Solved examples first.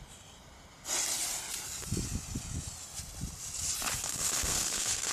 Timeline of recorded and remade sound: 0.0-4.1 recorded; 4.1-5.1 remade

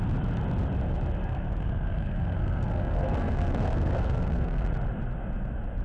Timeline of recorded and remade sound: 0.0-1.2 recorded; 1.2-4.7 remade; 4.7-5.8 recorded

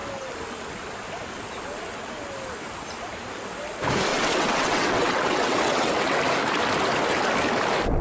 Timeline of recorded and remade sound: 0.0-4.1 recorded; 4.1-6.2 remade; 6.2-8.0 recorded

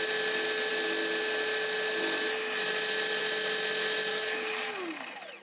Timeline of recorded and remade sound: 0.0-4.1 recorded; 4.1-4.7 remade; 4.7-5.4 recorded

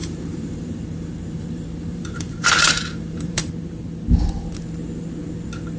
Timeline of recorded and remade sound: 0.0-3.5 remade; 3.5-5.8 recorded

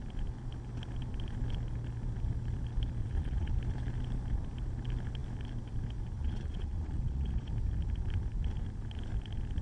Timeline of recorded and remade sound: 0.0-3.0 recorded; 3.0-3.5 remade; 3.5-6.2 recorded; 6.2-7.5 remade; 7.5-9.6 recorded

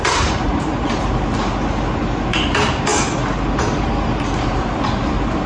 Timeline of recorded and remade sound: 0.0-5.5 recorded

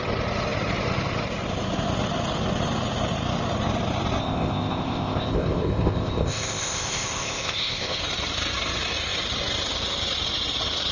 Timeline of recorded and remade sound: 0.0-4.2 recorded; 4.2-8.0 remade; 8.0-10.9 recorded